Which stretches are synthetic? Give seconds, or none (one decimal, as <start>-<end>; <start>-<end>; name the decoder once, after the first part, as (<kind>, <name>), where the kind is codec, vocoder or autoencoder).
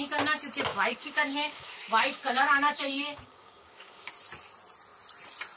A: 0.7-4.1 (codec, DAC)